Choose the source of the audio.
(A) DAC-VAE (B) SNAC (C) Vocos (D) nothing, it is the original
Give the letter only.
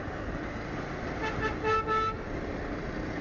D